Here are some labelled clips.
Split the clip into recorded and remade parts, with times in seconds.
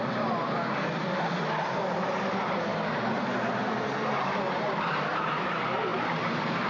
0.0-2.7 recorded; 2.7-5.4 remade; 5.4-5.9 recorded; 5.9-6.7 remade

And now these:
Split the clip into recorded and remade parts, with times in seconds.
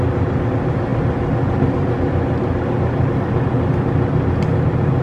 0.0-5.0 recorded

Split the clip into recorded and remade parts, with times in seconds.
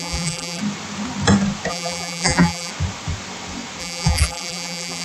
0.0-0.6 remade; 0.6-1.7 recorded; 1.7-2.7 remade; 2.7-3.8 recorded; 3.8-5.0 remade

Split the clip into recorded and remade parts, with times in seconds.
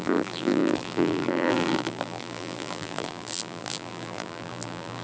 0.0-5.0 remade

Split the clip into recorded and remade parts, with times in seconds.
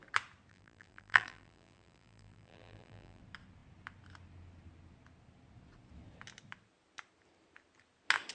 0.0-0.5 recorded; 0.5-3.2 remade; 3.2-8.3 recorded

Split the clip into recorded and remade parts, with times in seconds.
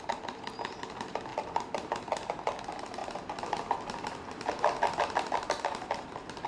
0.0-1.3 recorded; 1.3-2.6 remade; 2.6-3.0 recorded; 3.0-6.5 remade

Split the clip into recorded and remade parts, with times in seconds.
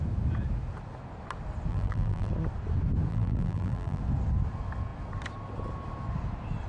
0.0-1.7 recorded; 1.7-2.3 remade; 2.3-3.1 recorded; 3.1-4.0 remade; 4.0-6.7 recorded